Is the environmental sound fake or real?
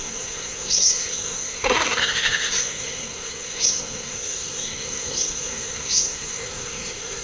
fake